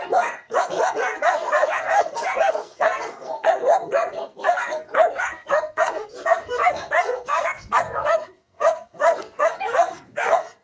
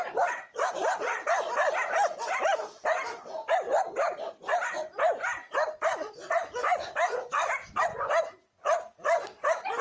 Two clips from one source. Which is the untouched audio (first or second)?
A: second